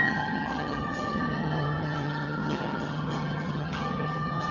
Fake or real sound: fake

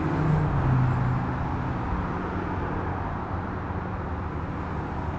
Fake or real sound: real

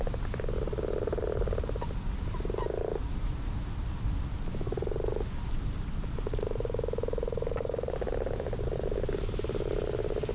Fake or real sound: real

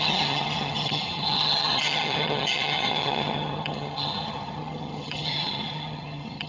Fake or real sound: fake